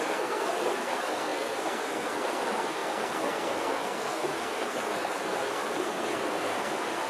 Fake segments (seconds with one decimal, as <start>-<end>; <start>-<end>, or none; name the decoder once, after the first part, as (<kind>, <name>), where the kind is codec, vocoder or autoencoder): 0.0-7.1 (codec, SNAC)